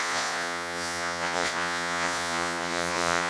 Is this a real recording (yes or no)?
no